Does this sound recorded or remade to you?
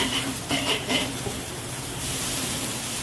remade